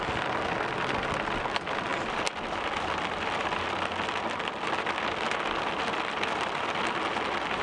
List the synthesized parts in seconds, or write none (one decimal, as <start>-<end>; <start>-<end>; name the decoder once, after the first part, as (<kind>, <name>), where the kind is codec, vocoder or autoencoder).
none